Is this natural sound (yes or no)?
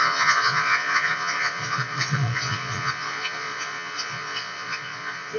no